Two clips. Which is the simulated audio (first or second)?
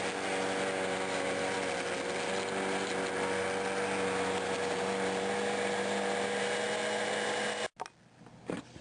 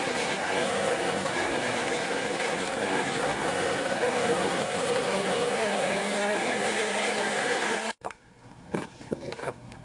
second